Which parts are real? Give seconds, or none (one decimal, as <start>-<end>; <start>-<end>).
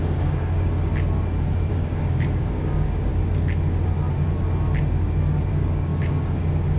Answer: 0.9-1.7; 3.1-5.5